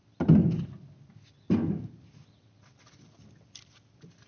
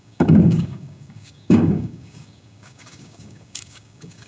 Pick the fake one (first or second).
second